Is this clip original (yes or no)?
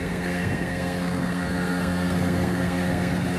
no